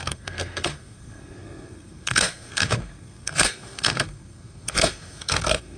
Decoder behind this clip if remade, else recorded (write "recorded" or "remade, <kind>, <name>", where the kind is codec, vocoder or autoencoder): remade, codec, SNAC